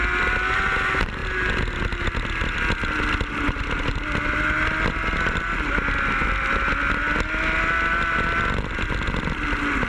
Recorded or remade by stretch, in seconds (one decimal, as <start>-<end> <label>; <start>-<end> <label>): 0.0-9.9 recorded